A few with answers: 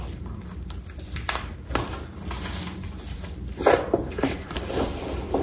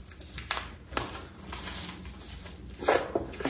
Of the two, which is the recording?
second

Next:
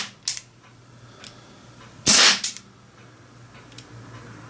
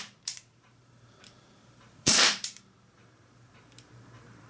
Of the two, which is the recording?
first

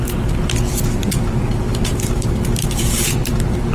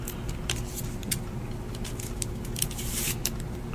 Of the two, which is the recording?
second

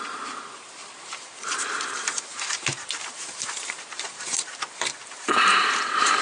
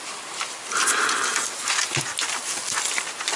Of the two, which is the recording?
second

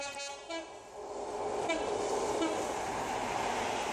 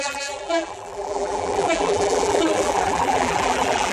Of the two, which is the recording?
first